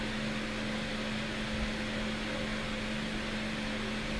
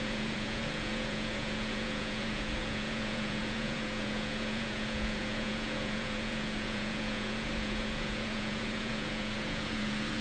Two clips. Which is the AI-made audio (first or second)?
second